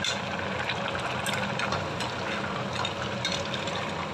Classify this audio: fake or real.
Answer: real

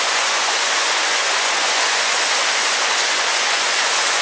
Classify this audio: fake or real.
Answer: fake